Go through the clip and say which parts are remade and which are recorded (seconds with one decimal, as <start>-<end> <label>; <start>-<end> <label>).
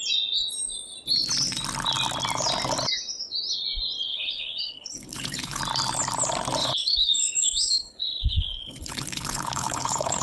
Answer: 0.0-4.1 recorded; 4.1-5.6 remade; 5.6-6.6 recorded; 6.6-10.2 remade